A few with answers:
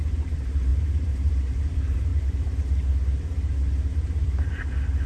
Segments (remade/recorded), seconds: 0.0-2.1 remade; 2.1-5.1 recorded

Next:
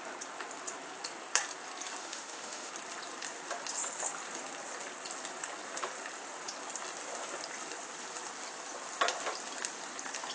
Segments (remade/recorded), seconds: 0.0-2.0 recorded; 2.0-2.7 remade; 2.7-10.3 recorded

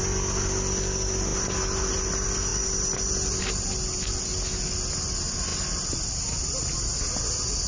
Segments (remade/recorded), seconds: 0.0-7.7 recorded

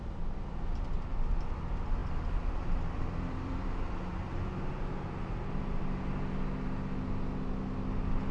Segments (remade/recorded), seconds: 0.0-2.0 recorded; 2.0-5.8 remade; 5.8-8.3 recorded

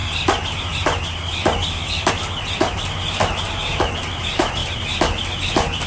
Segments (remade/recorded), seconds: 0.0-5.9 recorded

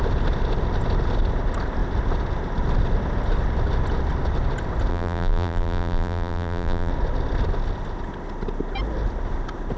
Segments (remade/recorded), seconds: 0.0-4.9 recorded; 4.9-6.9 remade; 6.9-9.8 recorded

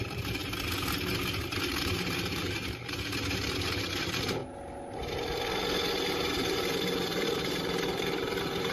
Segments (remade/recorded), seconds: 0.0-0.4 remade; 0.4-1.8 recorded; 1.8-4.4 remade; 4.4-5.9 recorded; 5.9-8.7 remade